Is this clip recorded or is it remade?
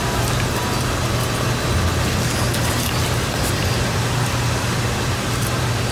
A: recorded